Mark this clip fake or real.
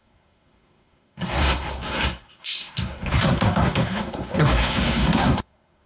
fake